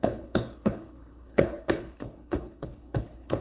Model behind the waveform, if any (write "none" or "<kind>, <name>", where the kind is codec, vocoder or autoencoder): codec, HILCodec